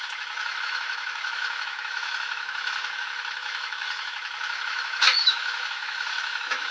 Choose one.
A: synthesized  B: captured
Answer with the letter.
A